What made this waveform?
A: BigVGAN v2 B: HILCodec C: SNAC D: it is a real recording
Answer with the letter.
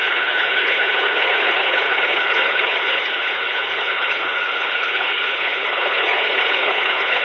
B